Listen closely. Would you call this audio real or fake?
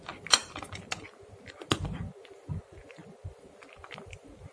real